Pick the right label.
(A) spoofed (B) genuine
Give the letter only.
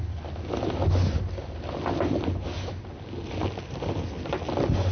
B